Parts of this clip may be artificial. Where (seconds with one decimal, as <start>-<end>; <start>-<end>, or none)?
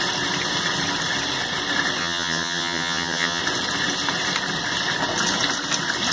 2.0-3.4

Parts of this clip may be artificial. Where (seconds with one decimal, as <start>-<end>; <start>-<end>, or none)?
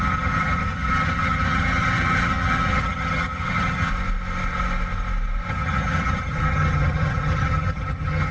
0.0-3.9; 5.5-8.3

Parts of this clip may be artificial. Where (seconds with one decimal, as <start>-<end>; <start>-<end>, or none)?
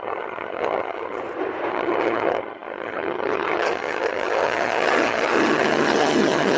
0.0-1.2; 1.7-6.6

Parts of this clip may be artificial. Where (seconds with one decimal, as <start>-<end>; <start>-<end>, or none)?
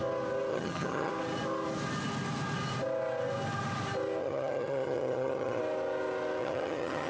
0.5-1.1; 4.2-5.6; 6.4-7.1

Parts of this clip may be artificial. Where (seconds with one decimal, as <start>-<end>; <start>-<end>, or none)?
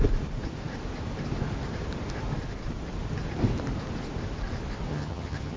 4.9-5.6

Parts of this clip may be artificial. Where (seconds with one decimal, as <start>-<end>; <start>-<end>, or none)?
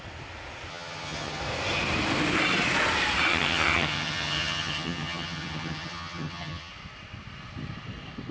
0.7-1.4; 3.3-6.7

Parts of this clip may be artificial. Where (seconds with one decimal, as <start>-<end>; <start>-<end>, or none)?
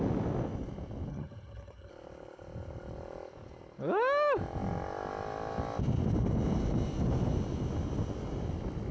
1.1-1.9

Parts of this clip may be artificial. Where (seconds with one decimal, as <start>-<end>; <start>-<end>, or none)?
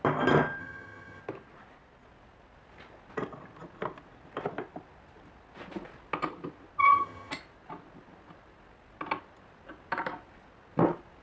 0.6-1.2; 6.8-7.3